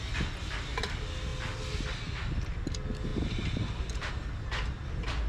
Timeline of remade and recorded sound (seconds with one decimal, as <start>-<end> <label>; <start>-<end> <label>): 0.0-5.3 recorded